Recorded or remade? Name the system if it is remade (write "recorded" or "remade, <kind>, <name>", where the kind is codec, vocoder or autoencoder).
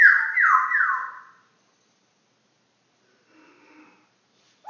recorded